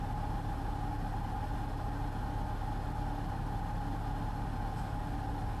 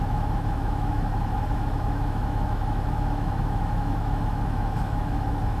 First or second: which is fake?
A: second